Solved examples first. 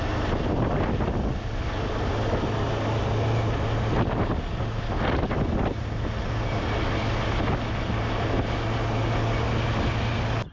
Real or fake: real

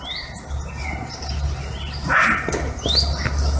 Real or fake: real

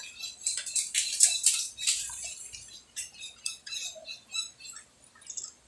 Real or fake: real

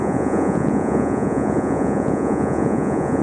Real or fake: fake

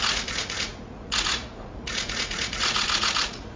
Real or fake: fake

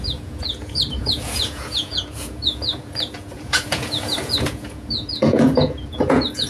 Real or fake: fake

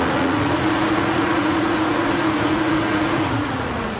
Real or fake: fake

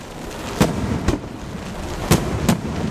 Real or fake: real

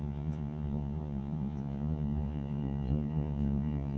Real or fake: fake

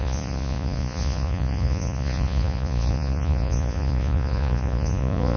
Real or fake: fake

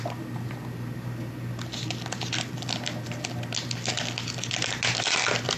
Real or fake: real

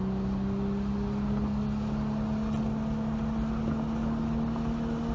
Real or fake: real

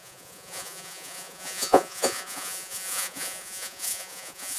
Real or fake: fake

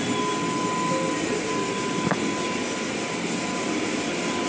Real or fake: real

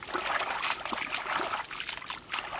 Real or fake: real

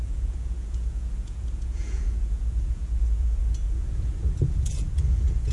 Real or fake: fake